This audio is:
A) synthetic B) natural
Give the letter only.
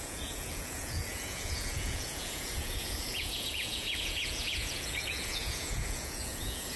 A